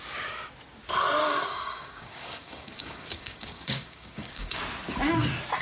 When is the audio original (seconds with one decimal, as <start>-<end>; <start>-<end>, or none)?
0.0-1.2; 4.6-5.6